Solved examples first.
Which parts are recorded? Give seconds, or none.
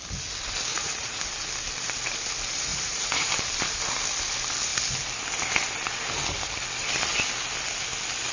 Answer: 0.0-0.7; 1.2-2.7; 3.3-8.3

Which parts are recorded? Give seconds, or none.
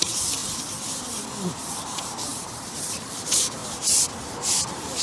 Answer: 0.4-1.5; 3.6-4.5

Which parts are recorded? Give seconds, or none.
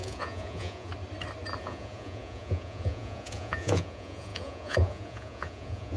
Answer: 0.9-1.6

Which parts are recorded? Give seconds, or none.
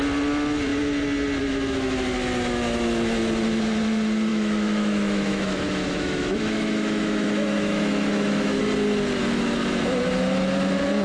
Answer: 0.0-4.3; 8.6-11.0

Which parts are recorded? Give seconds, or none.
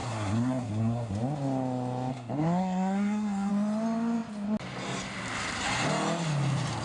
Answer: 1.1-2.1; 3.5-6.8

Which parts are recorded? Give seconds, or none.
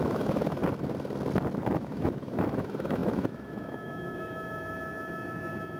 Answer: 0.6-1.7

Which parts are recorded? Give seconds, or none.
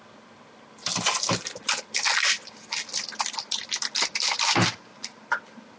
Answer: 0.0-5.8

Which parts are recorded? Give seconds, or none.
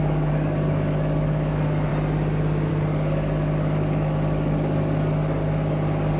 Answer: 1.9-2.7